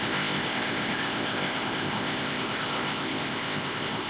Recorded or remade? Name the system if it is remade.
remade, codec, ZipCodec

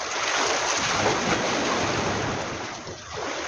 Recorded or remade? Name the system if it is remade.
recorded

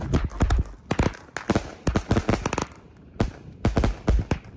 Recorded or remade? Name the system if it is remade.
recorded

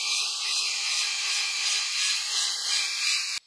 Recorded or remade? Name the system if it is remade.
recorded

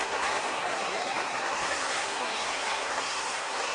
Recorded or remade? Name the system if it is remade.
remade, codec, SNAC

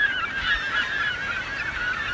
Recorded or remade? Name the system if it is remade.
recorded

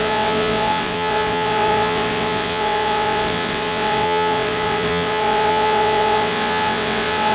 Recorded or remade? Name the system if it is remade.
remade, vocoder, WaveNeXt